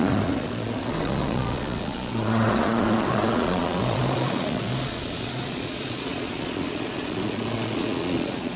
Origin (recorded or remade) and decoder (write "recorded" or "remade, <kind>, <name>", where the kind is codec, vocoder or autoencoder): remade, vocoder, Vocos